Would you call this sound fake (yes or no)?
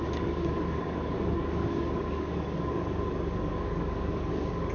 yes